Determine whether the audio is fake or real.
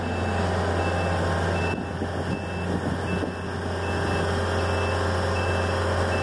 real